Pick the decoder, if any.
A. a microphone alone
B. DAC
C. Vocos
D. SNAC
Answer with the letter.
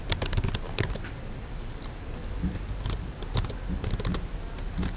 A